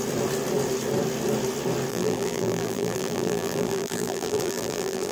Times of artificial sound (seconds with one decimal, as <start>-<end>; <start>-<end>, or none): 1.9-5.1